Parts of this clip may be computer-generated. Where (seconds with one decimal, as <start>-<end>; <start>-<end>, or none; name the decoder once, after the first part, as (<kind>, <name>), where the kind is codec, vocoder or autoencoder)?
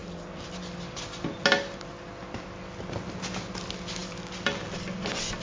none